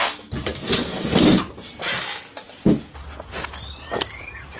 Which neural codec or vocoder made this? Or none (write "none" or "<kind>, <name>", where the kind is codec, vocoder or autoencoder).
none